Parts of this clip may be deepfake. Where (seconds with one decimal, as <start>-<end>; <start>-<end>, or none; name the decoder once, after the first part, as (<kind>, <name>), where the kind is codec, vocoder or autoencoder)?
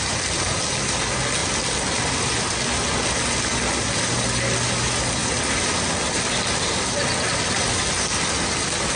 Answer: none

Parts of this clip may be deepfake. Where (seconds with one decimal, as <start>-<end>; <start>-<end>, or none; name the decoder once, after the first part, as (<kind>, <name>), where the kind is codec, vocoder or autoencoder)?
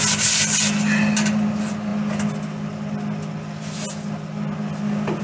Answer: none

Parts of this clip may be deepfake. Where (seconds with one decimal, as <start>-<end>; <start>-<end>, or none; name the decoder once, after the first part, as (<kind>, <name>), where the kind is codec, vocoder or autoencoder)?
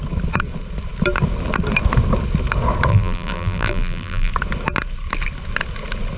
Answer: 2.9-4.3 (vocoder, BigVGAN v2)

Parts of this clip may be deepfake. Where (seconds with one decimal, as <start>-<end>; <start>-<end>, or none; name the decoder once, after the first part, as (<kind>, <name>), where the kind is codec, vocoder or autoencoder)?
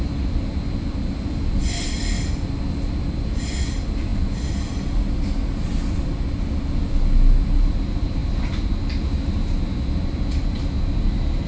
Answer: none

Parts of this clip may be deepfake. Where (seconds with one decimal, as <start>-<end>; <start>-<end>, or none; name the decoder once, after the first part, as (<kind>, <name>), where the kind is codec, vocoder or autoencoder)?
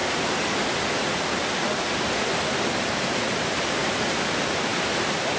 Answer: none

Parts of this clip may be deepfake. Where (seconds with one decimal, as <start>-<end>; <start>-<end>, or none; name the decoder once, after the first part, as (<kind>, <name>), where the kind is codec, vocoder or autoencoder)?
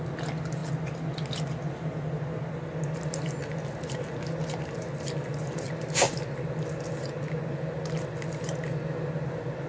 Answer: none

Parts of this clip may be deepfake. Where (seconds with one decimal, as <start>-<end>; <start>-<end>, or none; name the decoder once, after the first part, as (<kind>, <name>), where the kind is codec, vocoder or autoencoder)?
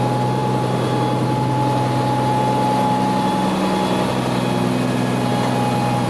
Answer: none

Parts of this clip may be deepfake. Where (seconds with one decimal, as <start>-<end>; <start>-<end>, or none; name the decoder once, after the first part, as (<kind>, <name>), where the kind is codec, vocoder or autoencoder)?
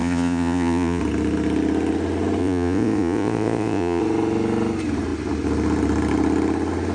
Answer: 0.0-1.0 (vocoder, Vocos); 2.4-4.0